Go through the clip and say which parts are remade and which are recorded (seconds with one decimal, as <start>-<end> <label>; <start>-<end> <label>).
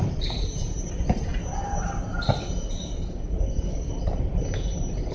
0.0-2.9 recorded; 2.9-3.9 remade; 3.9-5.1 recorded